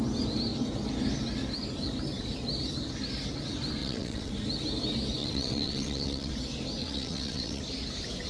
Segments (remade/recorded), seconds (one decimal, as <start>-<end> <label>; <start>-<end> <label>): 0.0-3.8 recorded; 3.8-4.3 remade; 4.3-5.2 recorded; 5.2-6.3 remade; 6.3-6.8 recorded; 6.8-7.6 remade; 7.6-8.3 recorded